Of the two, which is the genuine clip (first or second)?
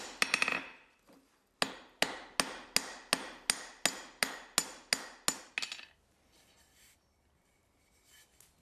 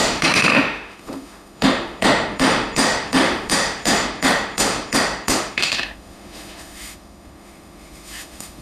first